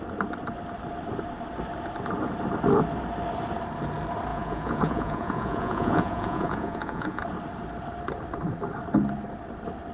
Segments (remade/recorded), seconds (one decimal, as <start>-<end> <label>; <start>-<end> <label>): 0.0-4.3 recorded; 4.3-7.2 remade; 7.2-9.9 recorded